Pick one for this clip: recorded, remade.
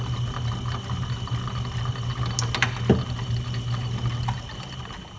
recorded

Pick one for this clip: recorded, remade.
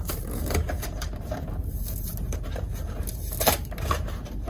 remade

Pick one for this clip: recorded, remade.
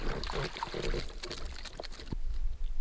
recorded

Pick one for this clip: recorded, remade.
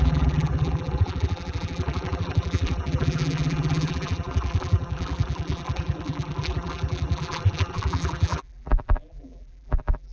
remade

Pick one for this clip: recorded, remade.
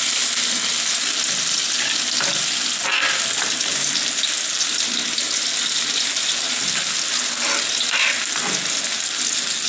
recorded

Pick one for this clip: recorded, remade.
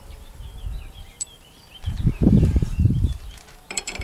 remade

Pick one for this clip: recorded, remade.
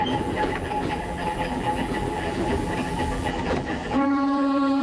remade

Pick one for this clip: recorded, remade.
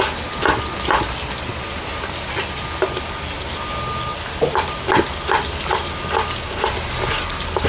recorded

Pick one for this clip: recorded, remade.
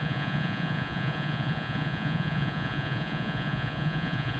remade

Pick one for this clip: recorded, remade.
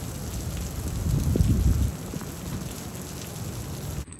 recorded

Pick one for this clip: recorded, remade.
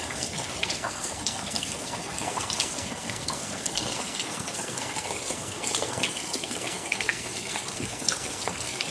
remade